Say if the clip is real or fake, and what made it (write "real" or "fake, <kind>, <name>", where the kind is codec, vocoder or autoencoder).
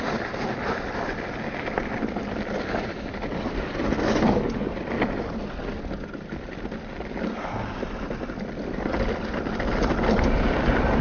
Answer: real